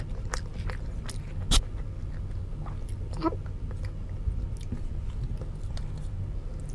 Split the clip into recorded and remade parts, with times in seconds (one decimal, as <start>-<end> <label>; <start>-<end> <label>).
0.0-6.7 recorded